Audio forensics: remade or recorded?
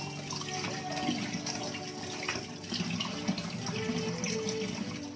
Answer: recorded